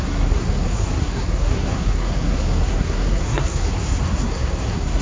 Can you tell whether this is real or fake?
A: fake